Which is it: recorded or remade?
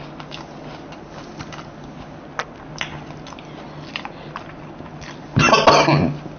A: recorded